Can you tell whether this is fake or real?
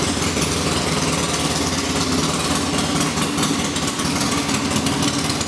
real